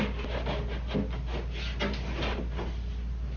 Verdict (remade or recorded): recorded